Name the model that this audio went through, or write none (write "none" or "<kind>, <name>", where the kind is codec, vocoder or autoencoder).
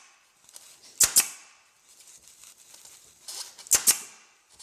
none